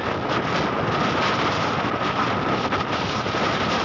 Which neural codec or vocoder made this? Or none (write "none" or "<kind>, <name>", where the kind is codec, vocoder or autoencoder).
none